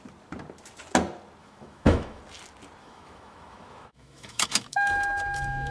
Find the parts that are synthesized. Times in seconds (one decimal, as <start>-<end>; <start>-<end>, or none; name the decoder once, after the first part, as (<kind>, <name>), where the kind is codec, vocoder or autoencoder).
1.4-2.2 (autoencoder, DAC-VAE); 2.8-5.7